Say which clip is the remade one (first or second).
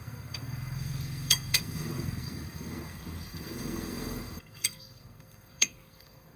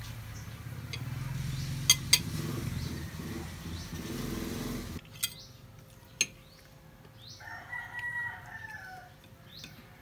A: first